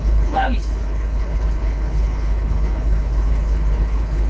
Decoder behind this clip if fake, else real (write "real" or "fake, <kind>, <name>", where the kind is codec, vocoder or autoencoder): fake, codec, HILCodec